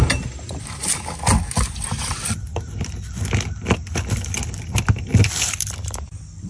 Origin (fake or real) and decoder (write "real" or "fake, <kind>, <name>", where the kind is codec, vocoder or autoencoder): real